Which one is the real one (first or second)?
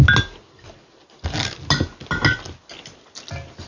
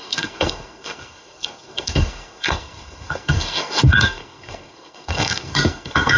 first